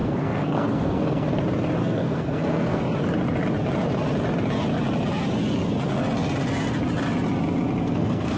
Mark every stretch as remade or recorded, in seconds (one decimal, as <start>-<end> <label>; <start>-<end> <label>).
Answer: 0.0-1.4 remade; 1.4-1.8 recorded; 1.8-2.8 remade; 2.8-7.8 recorded; 7.8-8.4 remade

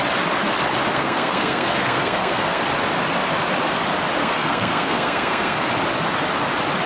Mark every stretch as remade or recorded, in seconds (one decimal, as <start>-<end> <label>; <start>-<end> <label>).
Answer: 0.0-0.9 recorded; 0.9-2.6 remade; 2.6-4.2 recorded; 4.2-5.6 remade; 5.6-6.9 recorded

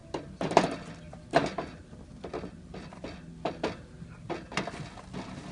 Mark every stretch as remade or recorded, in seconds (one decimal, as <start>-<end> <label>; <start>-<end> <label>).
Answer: 0.0-5.5 recorded

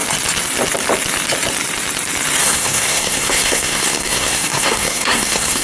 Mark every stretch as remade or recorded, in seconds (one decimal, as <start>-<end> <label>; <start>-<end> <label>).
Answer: 0.0-2.4 recorded; 2.4-5.6 remade

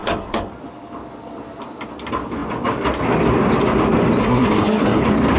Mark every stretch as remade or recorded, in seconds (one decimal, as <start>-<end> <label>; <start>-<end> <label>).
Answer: 0.0-0.5 remade; 0.5-4.2 recorded; 4.2-5.0 remade; 5.0-5.4 recorded